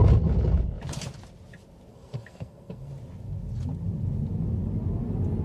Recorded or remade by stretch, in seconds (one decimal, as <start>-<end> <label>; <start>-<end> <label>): 0.0-1.9 recorded; 1.9-2.9 remade; 2.9-5.4 recorded